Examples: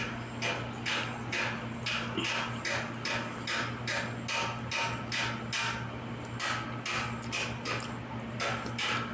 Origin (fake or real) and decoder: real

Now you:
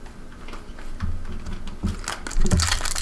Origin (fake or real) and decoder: real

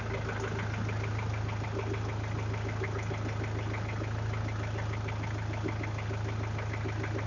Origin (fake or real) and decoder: real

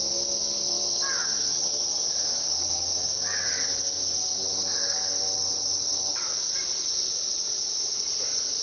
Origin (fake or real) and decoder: real